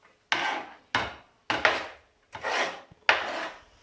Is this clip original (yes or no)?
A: yes